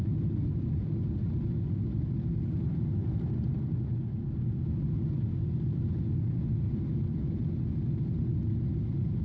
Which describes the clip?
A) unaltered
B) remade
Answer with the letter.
A